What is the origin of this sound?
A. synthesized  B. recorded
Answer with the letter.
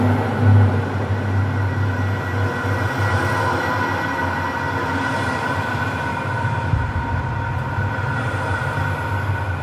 B